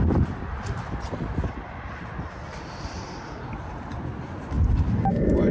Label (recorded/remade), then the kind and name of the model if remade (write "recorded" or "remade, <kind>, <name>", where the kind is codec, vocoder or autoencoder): remade, vocoder, BigVGAN v2